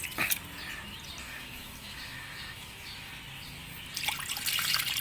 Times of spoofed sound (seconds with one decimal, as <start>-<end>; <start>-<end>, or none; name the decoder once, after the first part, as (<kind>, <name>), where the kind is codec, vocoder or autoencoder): 1.2-3.1 (autoencoder, DAC-VAE)

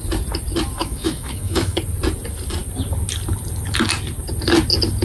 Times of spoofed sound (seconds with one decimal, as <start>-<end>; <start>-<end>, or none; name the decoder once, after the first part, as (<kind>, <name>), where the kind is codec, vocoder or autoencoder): 0.8-1.8 (autoencoder, DAC-VAE)

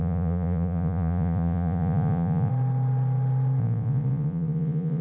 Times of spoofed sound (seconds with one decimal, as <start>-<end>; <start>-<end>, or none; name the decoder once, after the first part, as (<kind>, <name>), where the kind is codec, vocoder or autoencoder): 0.0-2.5 (vocoder, Vocos); 3.6-5.0